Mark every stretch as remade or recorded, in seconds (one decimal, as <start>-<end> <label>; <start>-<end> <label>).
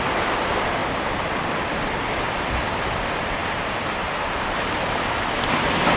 0.0-6.0 recorded